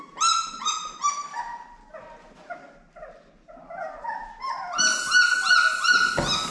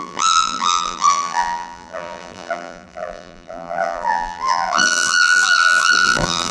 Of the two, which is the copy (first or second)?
second